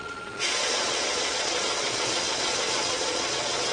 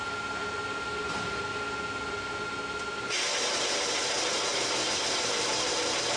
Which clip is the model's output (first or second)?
first